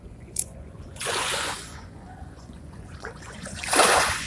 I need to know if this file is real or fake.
fake